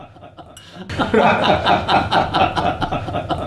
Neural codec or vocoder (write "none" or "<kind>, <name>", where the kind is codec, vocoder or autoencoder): none